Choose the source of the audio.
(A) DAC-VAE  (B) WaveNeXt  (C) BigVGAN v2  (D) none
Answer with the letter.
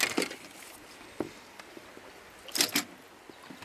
D